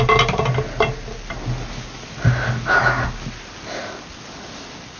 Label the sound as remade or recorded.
recorded